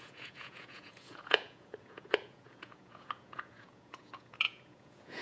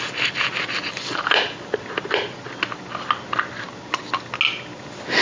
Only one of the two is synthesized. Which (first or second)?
first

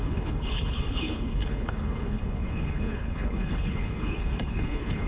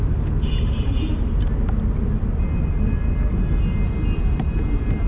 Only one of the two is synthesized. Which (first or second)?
first